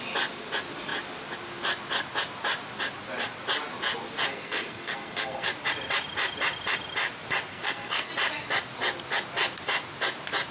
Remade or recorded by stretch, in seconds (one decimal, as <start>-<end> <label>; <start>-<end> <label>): 0.0-4.3 recorded; 4.3-5.5 remade; 5.5-7.5 recorded; 7.5-8.1 remade; 8.1-10.5 recorded